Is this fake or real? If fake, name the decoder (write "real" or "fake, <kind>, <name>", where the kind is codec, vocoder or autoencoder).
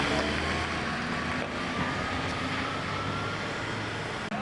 real